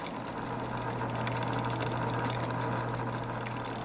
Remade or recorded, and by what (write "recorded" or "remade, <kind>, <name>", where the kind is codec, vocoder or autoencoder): recorded